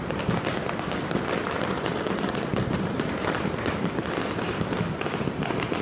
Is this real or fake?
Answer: real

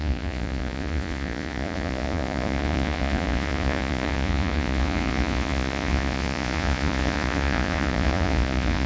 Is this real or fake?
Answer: fake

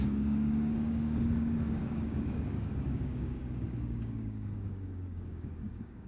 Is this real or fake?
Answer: fake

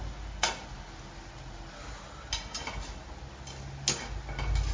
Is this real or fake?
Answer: real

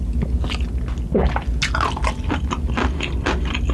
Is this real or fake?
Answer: real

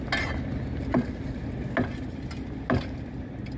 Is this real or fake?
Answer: real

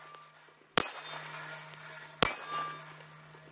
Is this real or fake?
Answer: real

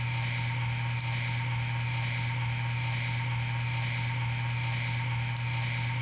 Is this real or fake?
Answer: real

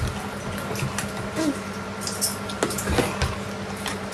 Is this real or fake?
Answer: real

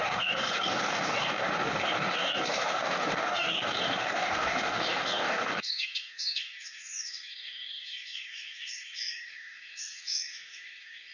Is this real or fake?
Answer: fake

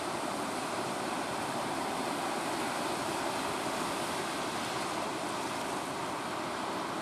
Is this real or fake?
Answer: real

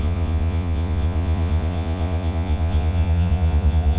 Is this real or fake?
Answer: fake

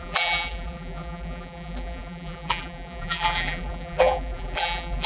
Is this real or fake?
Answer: fake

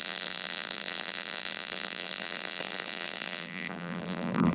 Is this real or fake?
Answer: fake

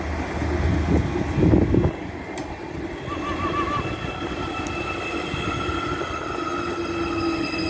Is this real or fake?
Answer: real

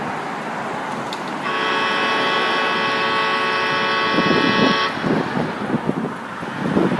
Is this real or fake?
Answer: real